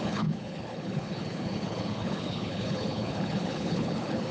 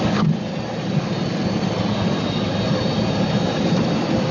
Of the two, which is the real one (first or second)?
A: second